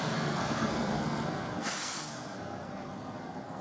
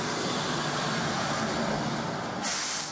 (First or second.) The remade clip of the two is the first